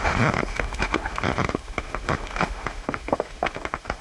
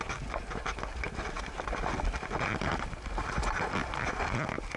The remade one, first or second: first